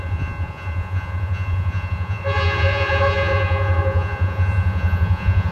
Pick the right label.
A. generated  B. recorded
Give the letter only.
A